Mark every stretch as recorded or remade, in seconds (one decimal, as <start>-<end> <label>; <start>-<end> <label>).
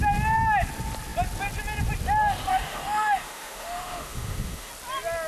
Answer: 0.0-2.5 recorded; 2.5-4.7 remade; 4.7-5.3 recorded